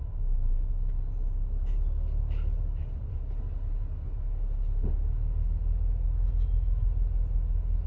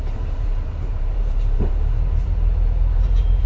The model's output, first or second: second